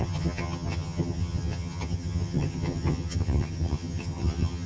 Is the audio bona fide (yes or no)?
no